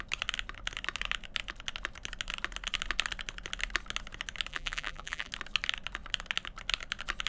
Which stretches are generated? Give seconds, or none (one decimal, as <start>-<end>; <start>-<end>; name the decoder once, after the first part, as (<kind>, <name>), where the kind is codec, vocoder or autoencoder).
4.5-5.3 (vocoder, BigVGAN v2)